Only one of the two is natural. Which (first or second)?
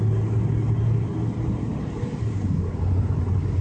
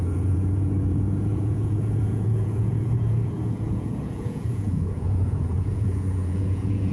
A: first